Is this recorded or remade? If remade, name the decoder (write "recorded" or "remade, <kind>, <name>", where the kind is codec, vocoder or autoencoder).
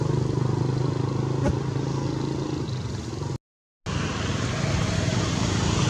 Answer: recorded